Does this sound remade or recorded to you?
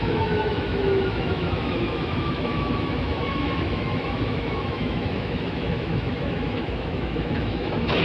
remade